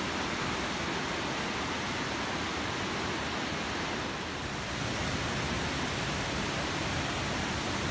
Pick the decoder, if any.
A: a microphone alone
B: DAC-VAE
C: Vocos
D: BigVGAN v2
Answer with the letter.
A